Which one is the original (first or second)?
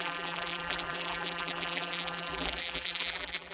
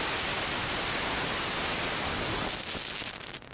second